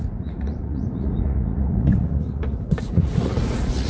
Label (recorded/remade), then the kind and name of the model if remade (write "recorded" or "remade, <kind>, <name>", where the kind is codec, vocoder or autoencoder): remade, vocoder, Vocos